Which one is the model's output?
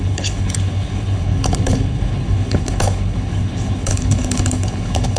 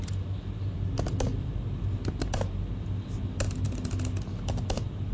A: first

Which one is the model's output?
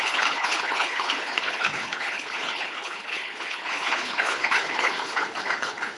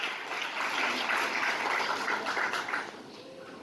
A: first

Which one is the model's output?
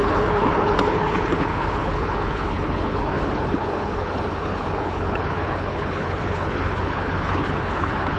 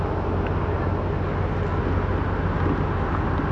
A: first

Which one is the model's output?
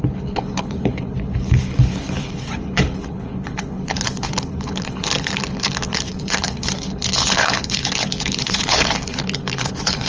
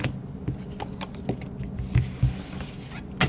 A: first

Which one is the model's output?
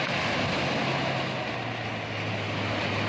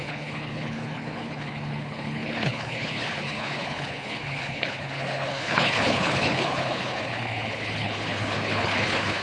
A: second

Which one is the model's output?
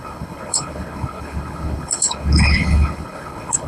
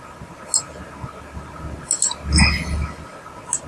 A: first